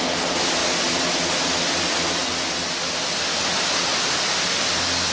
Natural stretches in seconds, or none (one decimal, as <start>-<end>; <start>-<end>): 0.0-5.1